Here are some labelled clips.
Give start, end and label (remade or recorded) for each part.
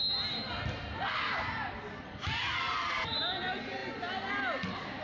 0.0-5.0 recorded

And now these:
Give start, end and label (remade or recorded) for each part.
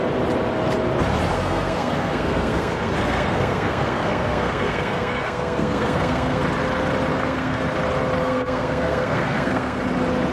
0.0-1.3 recorded; 1.3-6.4 remade; 6.4-7.1 recorded; 7.1-7.6 remade; 7.6-8.2 recorded; 8.2-9.8 remade; 9.8-10.3 recorded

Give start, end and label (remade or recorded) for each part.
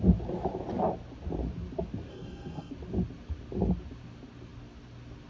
0.0-2.1 recorded; 2.1-2.7 remade; 2.7-5.3 recorded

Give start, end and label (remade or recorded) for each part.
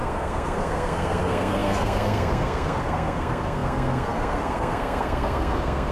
0.0-5.9 remade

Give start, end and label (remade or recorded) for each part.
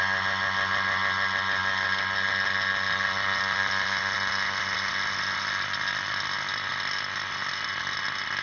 0.0-8.4 recorded